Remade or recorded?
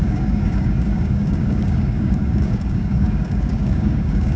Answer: remade